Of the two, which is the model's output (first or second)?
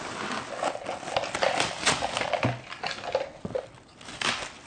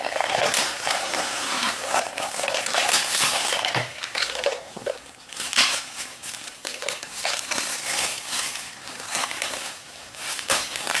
second